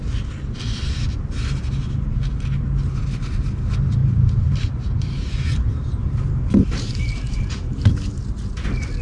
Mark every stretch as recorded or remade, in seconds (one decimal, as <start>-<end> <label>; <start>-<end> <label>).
0.0-4.0 recorded; 4.0-7.9 remade; 7.9-9.0 recorded